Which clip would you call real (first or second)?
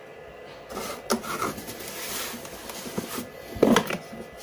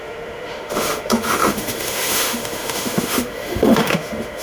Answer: first